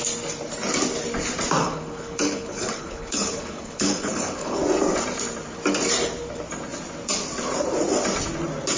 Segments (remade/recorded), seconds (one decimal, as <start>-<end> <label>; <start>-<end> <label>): 0.0-1.6 recorded; 1.6-4.6 remade; 4.6-8.8 recorded